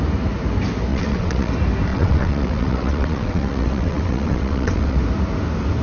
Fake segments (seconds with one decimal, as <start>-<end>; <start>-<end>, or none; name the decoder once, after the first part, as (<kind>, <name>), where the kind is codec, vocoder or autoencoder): 0.9-1.5 (vocoder, WaveNeXt); 1.9-5.0